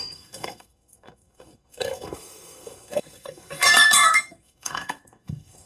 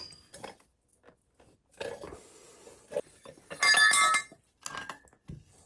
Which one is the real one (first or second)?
second